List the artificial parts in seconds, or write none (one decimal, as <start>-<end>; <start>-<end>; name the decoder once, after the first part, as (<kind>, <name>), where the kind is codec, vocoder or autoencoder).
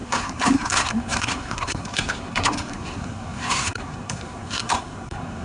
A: 0.0-5.4 (codec, SNAC)